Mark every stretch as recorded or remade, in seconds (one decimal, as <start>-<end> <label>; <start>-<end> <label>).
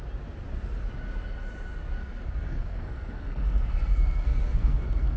0.0-2.0 recorded; 2.0-5.2 remade